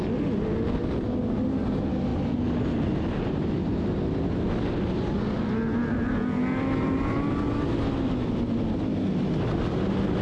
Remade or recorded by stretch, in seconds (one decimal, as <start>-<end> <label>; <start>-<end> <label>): 0.0-10.2 recorded